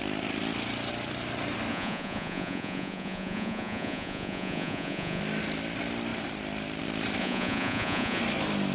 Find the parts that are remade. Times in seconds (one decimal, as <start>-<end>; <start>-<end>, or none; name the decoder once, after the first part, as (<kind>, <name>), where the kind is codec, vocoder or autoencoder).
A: 1.7-5.2 (vocoder, Vocos); 7.2-8.2